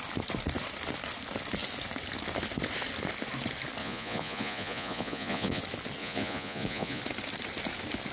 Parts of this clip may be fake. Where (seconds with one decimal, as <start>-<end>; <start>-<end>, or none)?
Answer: 3.8-5.6; 6.0-7.0